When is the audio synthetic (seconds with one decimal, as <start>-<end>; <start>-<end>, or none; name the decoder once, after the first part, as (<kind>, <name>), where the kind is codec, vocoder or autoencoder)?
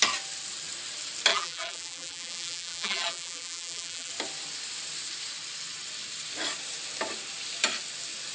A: 1.3-4.1 (vocoder, BigVGAN v2)